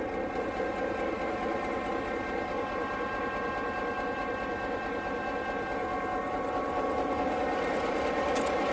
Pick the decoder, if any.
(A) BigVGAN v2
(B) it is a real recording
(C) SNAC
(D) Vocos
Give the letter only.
B